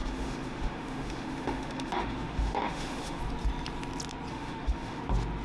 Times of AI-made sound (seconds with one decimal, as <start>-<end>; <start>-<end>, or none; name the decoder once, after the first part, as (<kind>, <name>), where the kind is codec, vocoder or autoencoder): 0.0-3.2 (autoencoder, DAC-VAE); 4.3-5.0